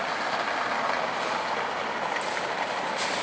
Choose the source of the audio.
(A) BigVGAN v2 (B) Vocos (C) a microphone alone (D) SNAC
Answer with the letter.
C